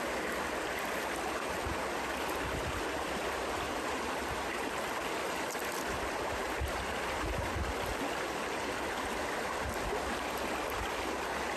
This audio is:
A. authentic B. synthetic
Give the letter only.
A